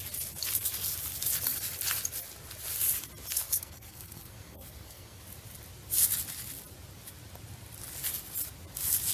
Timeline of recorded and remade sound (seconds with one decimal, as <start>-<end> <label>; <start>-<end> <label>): 0.0-3.3 recorded; 3.3-5.2 remade; 5.2-9.1 recorded